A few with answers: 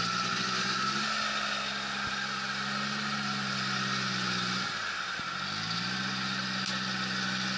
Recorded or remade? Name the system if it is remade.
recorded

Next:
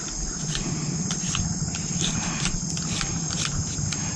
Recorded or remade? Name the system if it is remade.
remade, vocoder, BigVGAN v2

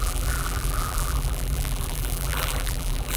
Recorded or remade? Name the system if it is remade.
remade, vocoder, BigVGAN v2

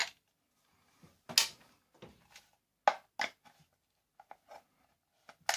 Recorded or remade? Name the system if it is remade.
recorded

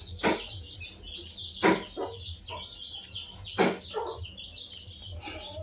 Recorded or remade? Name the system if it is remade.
recorded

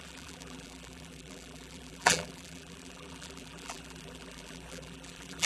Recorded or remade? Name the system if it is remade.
remade, vocoder, BigVGAN v2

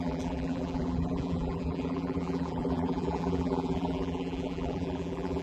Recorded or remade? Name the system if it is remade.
remade, vocoder, BigVGAN v2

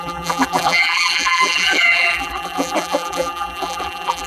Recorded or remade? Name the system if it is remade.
remade, vocoder, BigVGAN v2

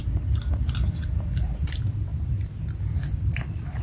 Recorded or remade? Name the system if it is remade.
recorded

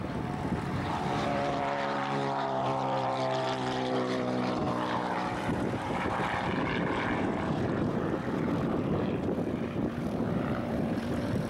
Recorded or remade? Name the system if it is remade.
remade, vocoder, BigVGAN v2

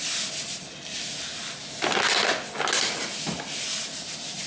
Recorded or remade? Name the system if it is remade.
recorded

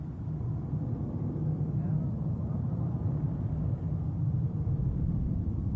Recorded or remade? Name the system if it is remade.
recorded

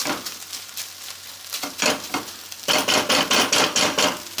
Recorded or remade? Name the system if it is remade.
recorded